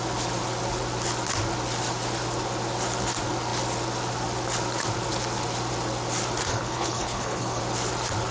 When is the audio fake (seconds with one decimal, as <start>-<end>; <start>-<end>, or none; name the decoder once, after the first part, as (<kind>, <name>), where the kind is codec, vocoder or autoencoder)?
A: 6.5-7.6 (codec, HILCodec)